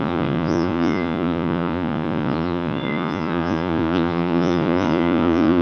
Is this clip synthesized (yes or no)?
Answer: yes